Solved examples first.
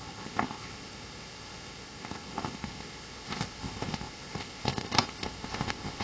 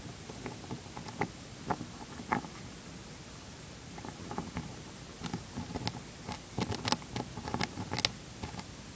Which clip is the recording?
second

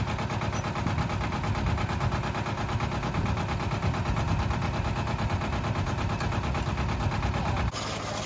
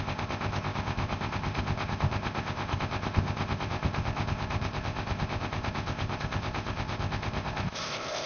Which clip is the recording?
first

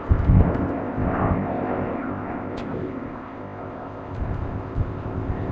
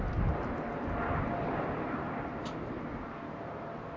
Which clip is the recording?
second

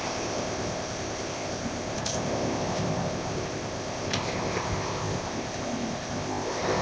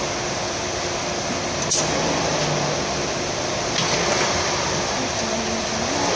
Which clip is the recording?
second